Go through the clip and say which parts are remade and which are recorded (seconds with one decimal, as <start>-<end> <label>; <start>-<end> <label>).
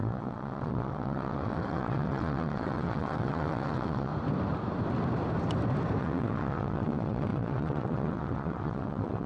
0.0-4.1 remade; 4.1-6.0 recorded; 6.0-9.3 remade